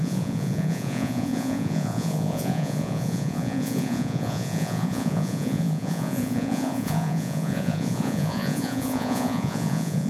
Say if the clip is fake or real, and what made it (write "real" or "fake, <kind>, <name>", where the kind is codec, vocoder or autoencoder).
fake, vocoder, Vocos